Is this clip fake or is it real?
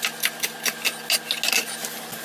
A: real